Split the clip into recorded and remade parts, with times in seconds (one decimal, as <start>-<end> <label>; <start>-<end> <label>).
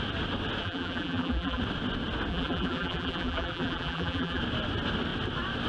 0.0-0.6 recorded; 0.6-1.6 remade; 1.6-2.3 recorded; 2.3-4.4 remade; 4.4-5.7 recorded